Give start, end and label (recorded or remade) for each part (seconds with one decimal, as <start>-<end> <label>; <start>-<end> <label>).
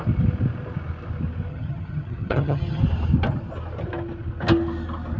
0.0-1.5 recorded; 1.5-2.8 remade; 2.8-5.2 recorded